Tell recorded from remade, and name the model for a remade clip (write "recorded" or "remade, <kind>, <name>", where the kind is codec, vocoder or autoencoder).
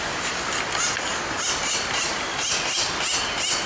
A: recorded